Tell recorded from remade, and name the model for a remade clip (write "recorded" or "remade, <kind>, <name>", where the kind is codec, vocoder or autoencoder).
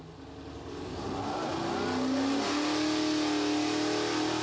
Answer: recorded